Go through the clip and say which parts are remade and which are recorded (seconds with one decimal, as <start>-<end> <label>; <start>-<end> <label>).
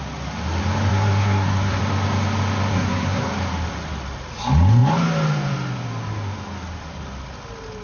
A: 0.0-0.9 recorded; 0.9-1.8 remade; 1.8-2.7 recorded; 2.7-3.3 remade; 3.3-7.8 recorded